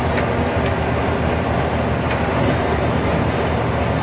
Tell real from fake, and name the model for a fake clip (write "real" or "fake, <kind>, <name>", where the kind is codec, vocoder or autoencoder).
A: real